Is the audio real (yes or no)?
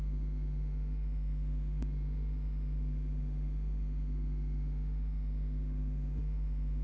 no